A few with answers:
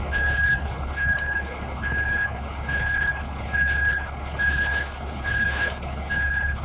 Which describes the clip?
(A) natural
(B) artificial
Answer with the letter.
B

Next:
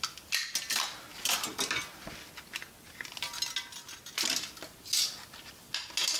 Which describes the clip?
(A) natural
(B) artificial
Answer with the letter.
A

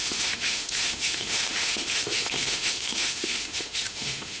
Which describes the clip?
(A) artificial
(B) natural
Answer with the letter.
A